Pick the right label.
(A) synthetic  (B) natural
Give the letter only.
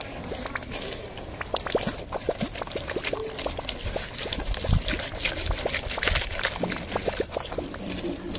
B